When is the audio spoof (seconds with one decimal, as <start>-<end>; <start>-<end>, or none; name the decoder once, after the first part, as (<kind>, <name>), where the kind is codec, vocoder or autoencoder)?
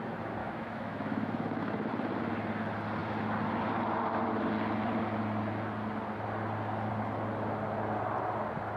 0.4-1.9 (autoencoder, DAC-VAE)